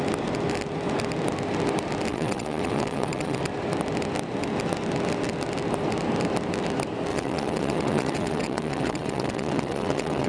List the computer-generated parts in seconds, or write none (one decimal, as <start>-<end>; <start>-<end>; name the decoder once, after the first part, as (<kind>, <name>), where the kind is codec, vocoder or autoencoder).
2.1-3.4 (vocoder, WaveNeXt); 7.1-10.3

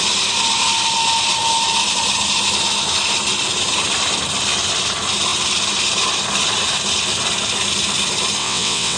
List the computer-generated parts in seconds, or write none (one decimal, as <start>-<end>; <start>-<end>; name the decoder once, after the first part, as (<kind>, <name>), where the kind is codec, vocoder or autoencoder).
8.4-9.0 (vocoder, WaveNeXt)

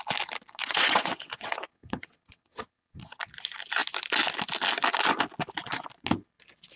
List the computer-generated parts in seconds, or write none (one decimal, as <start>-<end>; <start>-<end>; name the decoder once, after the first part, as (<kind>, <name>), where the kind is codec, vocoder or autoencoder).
0.6-3.2 (vocoder, WaveNeXt)

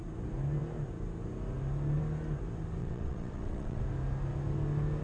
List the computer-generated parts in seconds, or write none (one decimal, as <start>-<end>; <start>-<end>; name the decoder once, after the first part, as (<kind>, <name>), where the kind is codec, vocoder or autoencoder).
2.8-3.8 (vocoder, WaveNeXt)

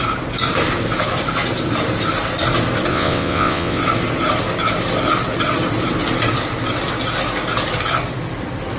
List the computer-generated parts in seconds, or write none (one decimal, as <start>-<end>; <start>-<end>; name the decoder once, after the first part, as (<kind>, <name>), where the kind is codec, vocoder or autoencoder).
2.9-3.8 (vocoder, WaveNeXt)